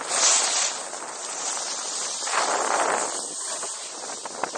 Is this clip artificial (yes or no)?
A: no